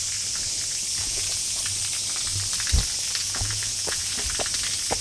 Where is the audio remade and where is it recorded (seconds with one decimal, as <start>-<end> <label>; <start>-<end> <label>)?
0.0-1.0 recorded; 1.0-1.6 remade; 1.6-3.2 recorded; 3.2-4.1 remade; 4.1-5.0 recorded